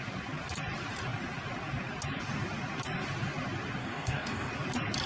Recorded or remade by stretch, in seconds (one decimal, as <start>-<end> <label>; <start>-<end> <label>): 0.0-3.8 recorded; 3.8-4.5 remade; 4.5-5.1 recorded